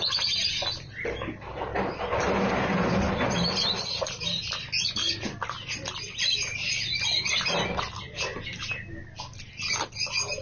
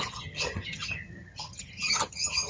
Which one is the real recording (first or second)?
first